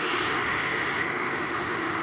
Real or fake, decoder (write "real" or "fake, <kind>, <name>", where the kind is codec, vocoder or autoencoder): fake, autoencoder, DAC-VAE